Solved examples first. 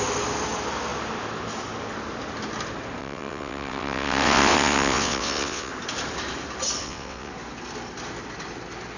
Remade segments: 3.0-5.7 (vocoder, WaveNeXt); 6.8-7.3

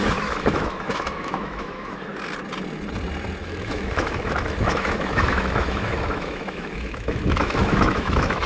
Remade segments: 0.0-2.1 (autoencoder, DAC-VAE); 3.4-8.5

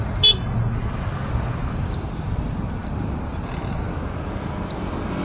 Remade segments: 1.6-2.3 (vocoder, BigVGAN v2); 2.8-3.9